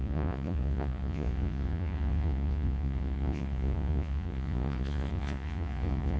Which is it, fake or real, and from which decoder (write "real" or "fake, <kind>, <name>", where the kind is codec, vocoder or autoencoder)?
fake, vocoder, Vocos